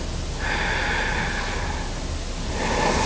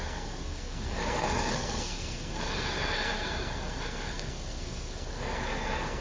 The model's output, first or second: second